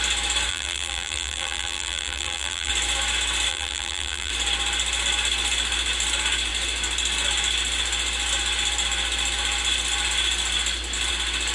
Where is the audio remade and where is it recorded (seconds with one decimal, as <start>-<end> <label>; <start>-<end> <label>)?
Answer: 0.0-0.5 recorded; 0.5-2.7 remade; 2.7-3.5 recorded; 3.5-4.3 remade; 4.3-11.5 recorded